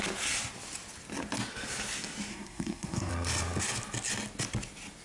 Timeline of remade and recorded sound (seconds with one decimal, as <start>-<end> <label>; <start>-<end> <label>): 0.0-2.3 recorded; 2.3-3.1 remade; 3.1-5.0 recorded